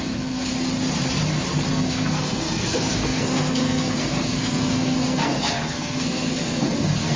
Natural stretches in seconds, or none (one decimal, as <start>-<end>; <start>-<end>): 0.5-1.7